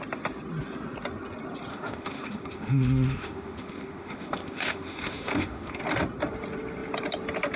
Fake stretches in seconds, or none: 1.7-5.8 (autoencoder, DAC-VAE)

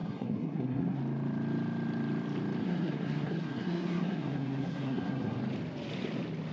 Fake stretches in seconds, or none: 0.0-1.0 (codec, SNAC); 2.6-5.4

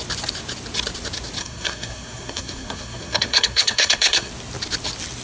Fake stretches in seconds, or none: 1.4-4.3 (codec, SNAC)

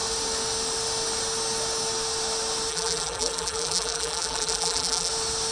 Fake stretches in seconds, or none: 2.7-5.1 (vocoder, BigVGAN v2)

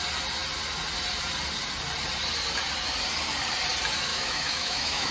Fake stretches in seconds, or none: 4.1-5.1 (autoencoder, DAC-VAE)

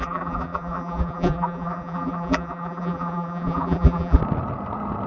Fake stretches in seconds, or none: 0.0-4.2 (vocoder, BigVGAN v2)

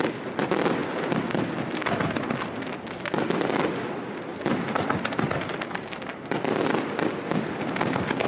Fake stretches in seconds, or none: none